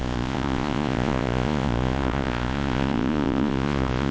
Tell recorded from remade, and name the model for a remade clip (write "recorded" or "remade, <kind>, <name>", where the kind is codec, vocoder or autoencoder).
remade, vocoder, Vocos